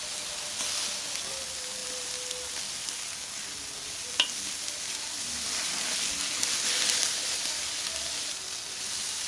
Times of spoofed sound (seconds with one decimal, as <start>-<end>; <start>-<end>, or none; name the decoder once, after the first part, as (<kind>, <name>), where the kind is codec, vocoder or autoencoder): none